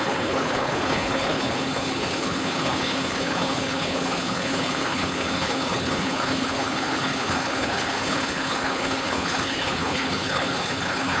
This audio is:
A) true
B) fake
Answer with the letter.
B